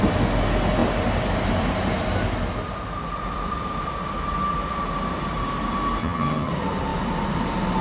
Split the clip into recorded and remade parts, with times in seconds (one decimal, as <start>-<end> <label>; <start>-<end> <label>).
0.0-6.0 recorded; 6.0-6.5 remade; 6.5-7.8 recorded